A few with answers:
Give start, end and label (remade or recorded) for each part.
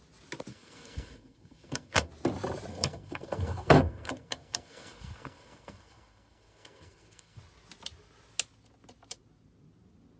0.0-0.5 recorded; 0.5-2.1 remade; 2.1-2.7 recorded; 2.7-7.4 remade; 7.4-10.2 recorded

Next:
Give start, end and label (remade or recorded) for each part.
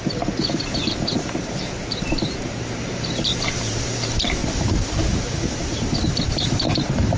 0.0-7.2 remade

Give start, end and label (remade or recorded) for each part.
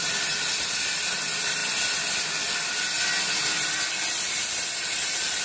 0.0-1.6 remade; 1.6-4.3 recorded; 4.3-5.4 remade